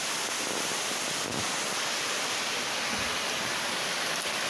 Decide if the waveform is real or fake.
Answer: real